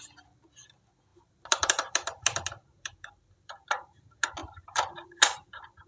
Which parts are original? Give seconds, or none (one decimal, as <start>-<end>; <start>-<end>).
0.0-1.1; 3.3-4.4; 5.5-5.9